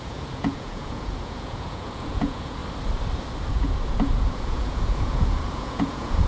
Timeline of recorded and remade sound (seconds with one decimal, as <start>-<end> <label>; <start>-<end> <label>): 0.0-2.6 remade; 2.6-3.5 recorded; 3.5-6.3 remade